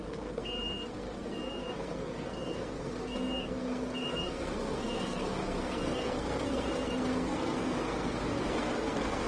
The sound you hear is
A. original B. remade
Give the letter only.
B